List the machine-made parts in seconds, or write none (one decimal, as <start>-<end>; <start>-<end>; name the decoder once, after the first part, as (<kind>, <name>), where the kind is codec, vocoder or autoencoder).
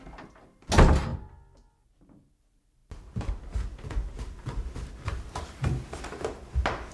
none